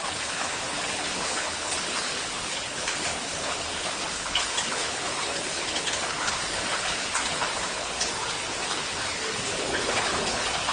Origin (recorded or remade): remade